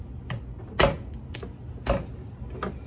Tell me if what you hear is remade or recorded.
recorded